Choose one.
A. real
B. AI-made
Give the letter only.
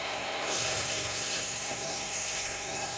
B